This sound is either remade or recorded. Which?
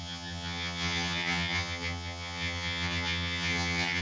remade